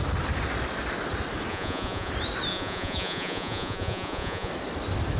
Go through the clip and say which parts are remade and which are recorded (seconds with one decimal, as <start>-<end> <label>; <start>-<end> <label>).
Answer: 0.0-1.5 recorded; 1.5-2.1 remade; 2.1-2.5 recorded; 2.5-4.5 remade; 4.5-5.2 recorded